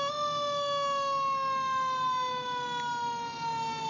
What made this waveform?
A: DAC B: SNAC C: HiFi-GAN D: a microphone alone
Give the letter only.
D